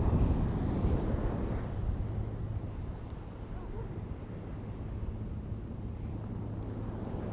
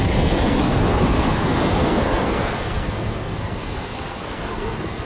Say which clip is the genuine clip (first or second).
first